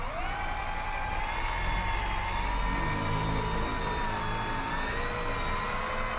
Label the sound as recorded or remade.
recorded